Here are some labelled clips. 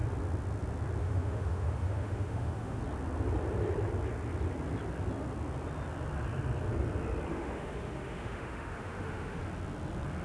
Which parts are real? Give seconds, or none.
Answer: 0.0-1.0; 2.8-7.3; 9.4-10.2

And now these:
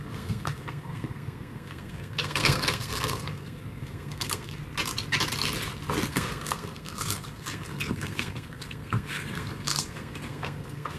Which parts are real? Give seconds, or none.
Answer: 4.6-6.1

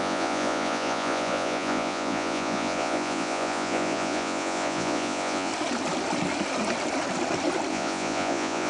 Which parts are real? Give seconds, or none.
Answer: 5.5-7.7

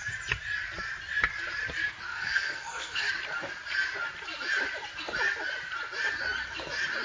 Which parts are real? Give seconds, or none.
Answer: 0.0-2.1; 3.1-7.0